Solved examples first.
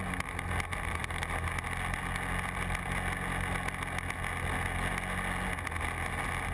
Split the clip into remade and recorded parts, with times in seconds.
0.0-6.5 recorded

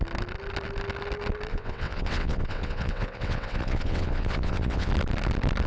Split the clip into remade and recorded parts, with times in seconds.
0.0-1.5 recorded; 1.5-4.9 remade; 4.9-5.7 recorded